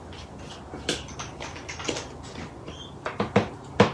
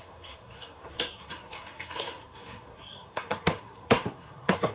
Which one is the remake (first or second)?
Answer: second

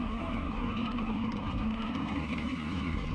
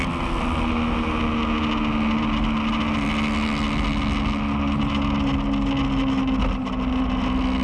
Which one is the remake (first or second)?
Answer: first